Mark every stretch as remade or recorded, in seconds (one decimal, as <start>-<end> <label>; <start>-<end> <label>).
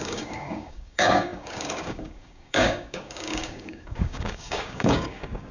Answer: 0.0-5.5 remade